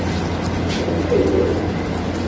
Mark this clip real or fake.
real